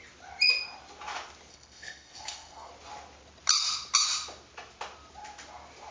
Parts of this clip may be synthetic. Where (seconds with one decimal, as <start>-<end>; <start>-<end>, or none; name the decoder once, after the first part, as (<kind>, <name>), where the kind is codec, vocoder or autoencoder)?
1.5-2.7 (codec, SNAC)